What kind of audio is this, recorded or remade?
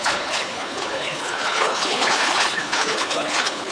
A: remade